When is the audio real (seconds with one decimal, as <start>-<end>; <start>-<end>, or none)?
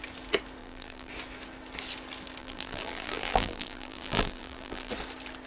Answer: 0.0-0.6; 1.1-2.4; 4.9-5.5